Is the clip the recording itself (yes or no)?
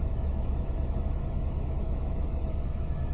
no